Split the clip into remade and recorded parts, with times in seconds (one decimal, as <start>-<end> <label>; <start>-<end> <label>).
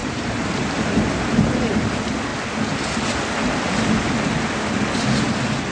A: 0.0-1.6 remade; 1.6-5.7 recorded